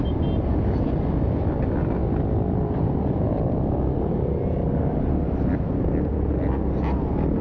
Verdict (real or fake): real